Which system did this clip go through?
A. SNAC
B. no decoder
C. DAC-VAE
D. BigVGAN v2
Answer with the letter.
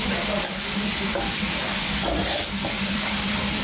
D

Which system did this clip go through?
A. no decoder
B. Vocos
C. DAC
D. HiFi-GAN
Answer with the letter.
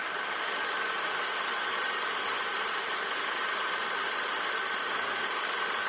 A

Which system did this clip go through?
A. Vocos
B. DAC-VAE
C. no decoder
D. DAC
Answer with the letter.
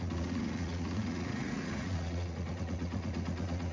A